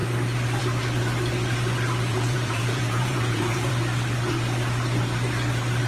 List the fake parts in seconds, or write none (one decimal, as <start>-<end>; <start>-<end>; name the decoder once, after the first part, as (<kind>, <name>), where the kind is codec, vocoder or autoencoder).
2.1-3.7 (vocoder, Vocos)